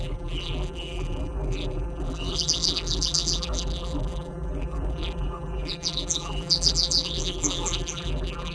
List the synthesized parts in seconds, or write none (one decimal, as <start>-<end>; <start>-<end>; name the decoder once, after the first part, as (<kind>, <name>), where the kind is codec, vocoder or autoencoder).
0.0-8.5 (vocoder, BigVGAN v2)